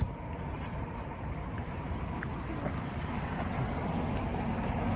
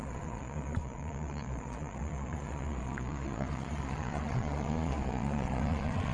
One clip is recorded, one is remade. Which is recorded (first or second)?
first